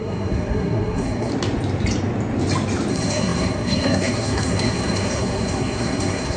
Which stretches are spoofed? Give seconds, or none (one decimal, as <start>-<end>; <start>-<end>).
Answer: 0.0-1.3; 2.9-6.4